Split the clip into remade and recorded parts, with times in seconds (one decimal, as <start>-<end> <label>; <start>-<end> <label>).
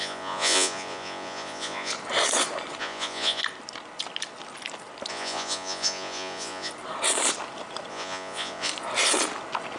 0.0-1.9 remade; 1.9-2.8 recorded; 2.8-3.4 remade; 3.4-5.1 recorded; 5.1-6.7 remade; 6.7-7.9 recorded; 7.9-8.7 remade; 8.7-9.8 recorded